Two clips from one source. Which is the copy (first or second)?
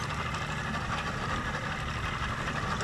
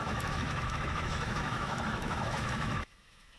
second